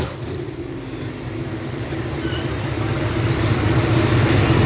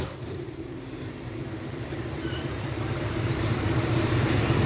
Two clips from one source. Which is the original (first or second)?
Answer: first